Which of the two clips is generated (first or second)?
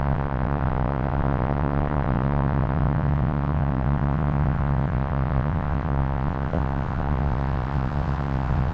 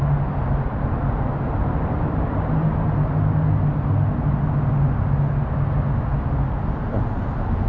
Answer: first